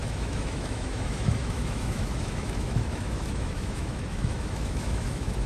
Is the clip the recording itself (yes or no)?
no